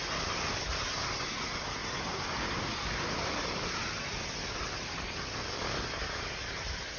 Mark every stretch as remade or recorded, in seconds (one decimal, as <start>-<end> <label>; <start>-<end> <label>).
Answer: 0.0-7.0 recorded